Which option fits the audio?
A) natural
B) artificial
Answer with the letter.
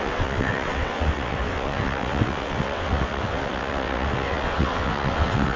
B